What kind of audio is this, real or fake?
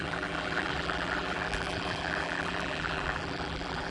fake